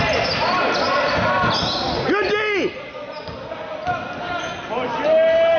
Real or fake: real